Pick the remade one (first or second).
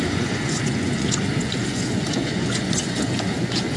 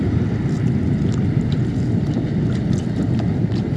first